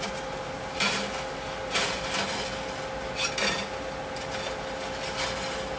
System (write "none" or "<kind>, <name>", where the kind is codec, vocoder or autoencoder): none